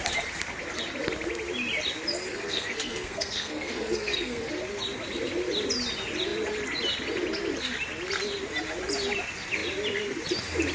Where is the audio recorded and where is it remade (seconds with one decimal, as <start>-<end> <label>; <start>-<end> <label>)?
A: 0.0-2.3 recorded; 2.3-4.5 remade; 4.5-10.7 recorded